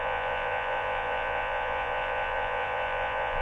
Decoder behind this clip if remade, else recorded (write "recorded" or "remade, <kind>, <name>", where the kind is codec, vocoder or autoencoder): remade, vocoder, Vocos